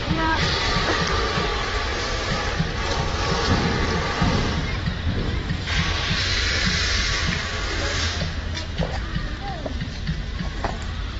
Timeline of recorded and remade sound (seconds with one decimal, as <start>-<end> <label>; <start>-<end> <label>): 0.0-7.5 remade; 7.5-8.7 recorded; 8.7-11.2 remade